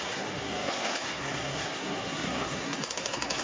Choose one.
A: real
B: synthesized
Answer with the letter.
B